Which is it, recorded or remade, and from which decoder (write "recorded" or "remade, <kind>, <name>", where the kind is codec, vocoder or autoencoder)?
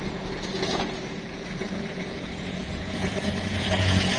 remade, vocoder, Vocos